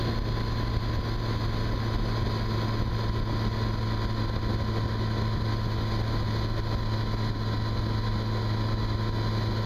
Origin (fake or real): real